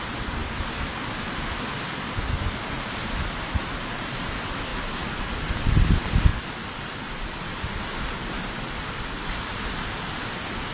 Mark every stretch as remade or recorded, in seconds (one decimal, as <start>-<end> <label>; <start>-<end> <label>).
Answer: 0.0-4.7 recorded; 4.7-5.6 remade; 5.6-6.3 recorded; 6.3-7.8 remade; 7.8-10.7 recorded